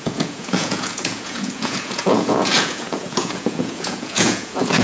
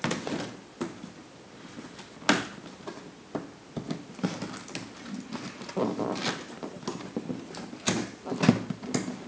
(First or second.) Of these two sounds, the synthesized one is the first